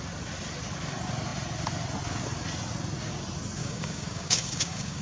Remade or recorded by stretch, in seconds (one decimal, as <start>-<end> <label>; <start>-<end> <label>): 0.0-3.6 recorded; 3.6-5.0 remade

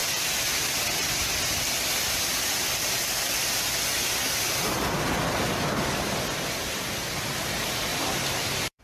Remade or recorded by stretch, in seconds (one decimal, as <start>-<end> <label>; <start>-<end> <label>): 0.0-1.2 remade; 1.2-7.9 recorded; 7.9-8.8 remade

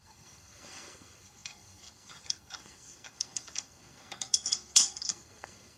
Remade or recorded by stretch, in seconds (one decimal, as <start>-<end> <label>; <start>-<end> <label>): 0.0-5.8 remade

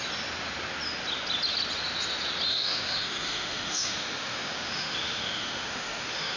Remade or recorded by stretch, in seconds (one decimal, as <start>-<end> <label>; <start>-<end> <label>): 0.0-2.5 recorded; 2.5-6.4 remade